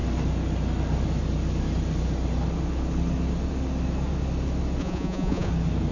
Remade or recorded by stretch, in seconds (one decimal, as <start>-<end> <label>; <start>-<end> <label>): 0.0-4.8 recorded; 4.8-5.5 remade; 5.5-5.9 recorded